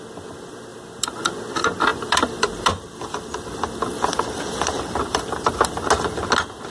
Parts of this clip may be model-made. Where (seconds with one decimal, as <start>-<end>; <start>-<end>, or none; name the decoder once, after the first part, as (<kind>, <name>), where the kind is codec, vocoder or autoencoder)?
0.7-1.3 (vocoder, BigVGAN v2); 1.9-5.9